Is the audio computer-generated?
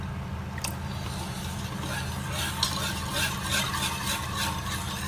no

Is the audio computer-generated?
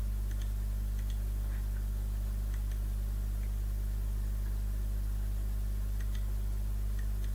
no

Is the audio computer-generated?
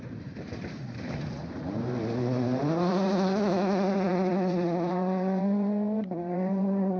yes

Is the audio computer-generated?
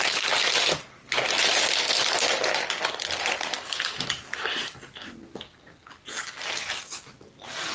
no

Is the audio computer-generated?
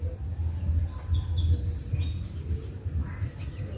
no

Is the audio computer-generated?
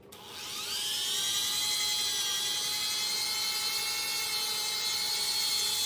no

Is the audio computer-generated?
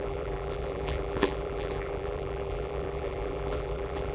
yes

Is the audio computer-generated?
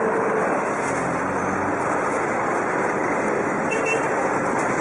yes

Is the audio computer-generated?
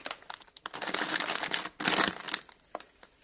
no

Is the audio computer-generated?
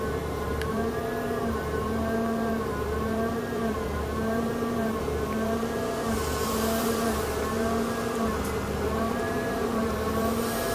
yes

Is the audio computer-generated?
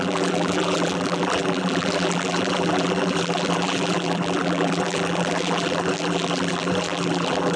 yes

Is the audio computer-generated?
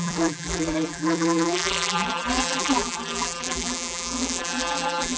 yes